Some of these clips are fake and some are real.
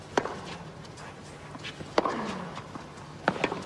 real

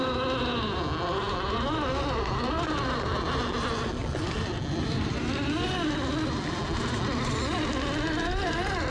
real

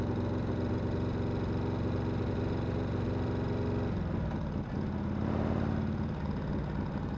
real